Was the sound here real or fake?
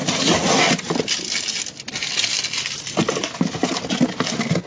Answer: real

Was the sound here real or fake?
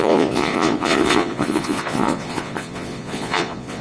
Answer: fake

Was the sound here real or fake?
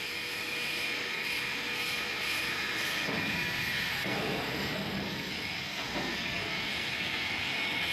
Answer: fake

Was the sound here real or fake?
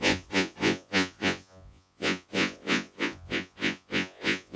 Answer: fake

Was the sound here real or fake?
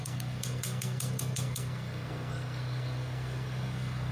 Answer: fake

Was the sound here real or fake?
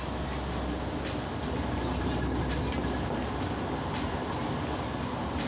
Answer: real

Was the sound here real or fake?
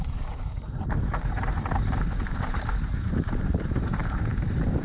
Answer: fake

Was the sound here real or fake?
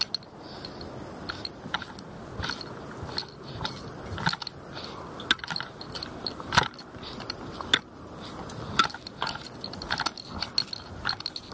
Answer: real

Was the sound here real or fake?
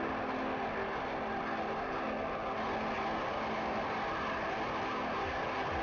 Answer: real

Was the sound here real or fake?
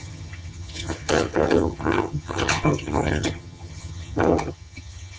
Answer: fake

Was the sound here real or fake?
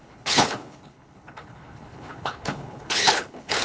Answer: fake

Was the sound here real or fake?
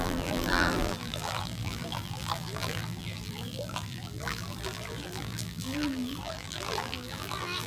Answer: fake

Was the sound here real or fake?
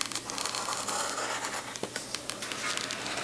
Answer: real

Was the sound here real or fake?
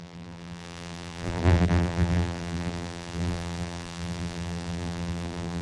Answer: fake